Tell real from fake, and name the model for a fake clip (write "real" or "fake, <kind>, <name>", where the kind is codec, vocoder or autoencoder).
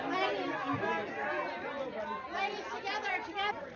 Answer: real